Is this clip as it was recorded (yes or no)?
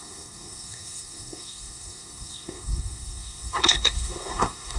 no